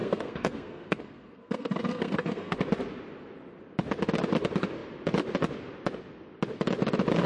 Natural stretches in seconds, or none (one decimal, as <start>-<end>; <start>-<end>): 2.6-7.3